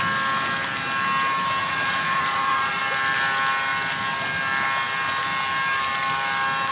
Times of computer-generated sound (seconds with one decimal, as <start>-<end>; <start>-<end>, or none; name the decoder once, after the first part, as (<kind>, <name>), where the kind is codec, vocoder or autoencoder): 1.6-2.8 (vocoder, Vocos)